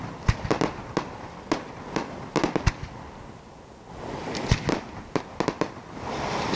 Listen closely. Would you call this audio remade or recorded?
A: recorded